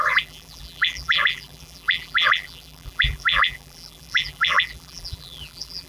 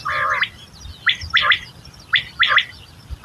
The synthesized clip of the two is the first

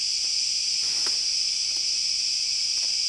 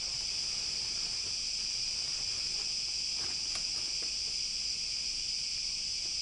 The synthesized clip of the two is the first